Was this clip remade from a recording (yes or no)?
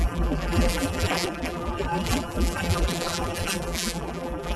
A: yes